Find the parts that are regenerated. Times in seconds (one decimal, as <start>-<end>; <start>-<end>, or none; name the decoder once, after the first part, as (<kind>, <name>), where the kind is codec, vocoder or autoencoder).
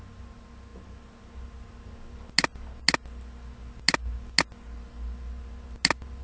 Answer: none